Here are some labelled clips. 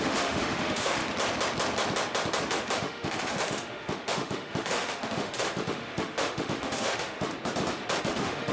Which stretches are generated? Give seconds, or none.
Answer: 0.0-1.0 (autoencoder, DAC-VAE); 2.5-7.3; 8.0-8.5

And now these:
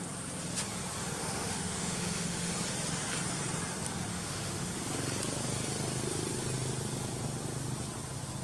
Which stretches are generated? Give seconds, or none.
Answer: 1.2-2.5 (autoencoder, DAC-VAE); 4.1-4.7

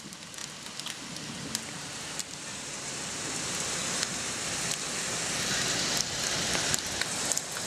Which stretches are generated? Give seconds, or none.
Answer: none

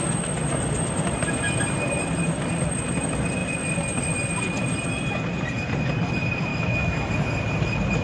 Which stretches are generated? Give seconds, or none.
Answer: 6.5-7.1 (autoencoder, DAC-VAE)

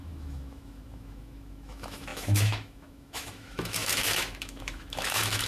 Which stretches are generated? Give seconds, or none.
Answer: 0.0-5.5 (autoencoder, DAC-VAE)

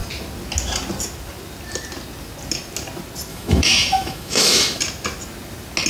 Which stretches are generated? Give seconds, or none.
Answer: 3.3-4.8 (autoencoder, DAC-VAE)

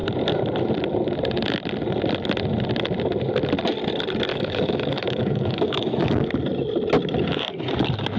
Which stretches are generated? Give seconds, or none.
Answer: 4.3-6.3 (autoencoder, DAC-VAE)